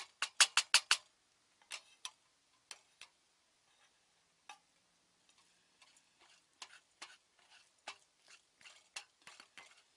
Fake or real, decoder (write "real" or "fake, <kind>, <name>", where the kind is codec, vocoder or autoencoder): real